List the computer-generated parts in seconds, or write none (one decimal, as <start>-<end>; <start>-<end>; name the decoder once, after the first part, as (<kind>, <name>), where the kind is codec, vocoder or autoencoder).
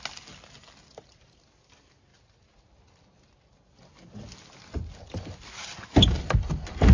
none